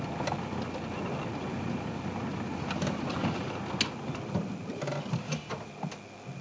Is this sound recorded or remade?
recorded